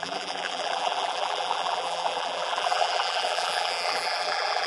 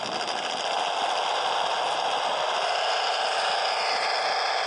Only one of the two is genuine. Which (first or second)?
second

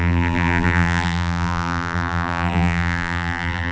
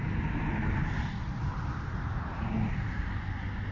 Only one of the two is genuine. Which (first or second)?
second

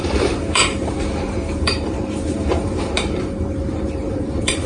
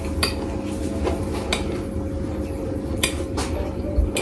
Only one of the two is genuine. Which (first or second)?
second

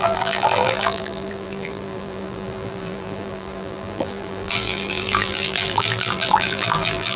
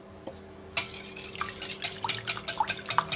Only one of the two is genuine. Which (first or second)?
second